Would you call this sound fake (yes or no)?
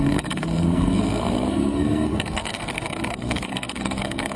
yes